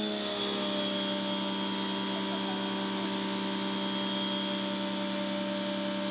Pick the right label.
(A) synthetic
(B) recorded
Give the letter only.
B